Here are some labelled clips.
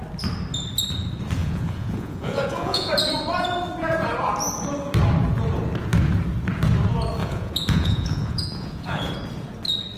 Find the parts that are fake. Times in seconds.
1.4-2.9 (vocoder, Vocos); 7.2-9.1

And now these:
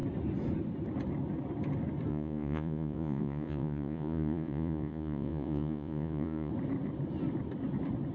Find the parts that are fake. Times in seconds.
2.1-6.5 (vocoder, Vocos)

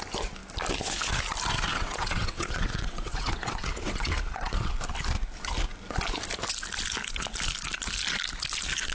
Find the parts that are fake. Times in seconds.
1.7-4.7 (vocoder, WaveNeXt)

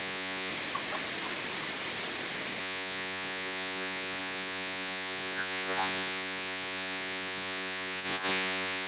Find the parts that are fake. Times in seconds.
0.0-0.5 (vocoder, Vocos); 2.6-8.9

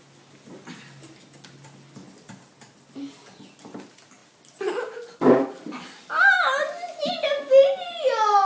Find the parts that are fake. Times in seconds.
none

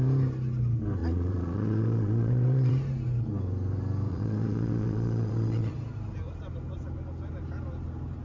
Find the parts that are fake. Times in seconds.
1.0-2.7 (vocoder, Vocos); 4.1-5.7

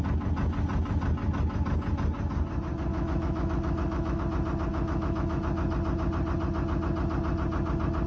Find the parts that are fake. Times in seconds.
2.9-4.2 (autoencoder, DAC-VAE); 4.7-5.4

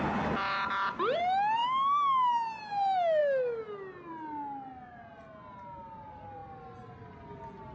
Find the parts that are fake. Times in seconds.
none